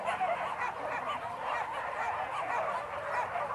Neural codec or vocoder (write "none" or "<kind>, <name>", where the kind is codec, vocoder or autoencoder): none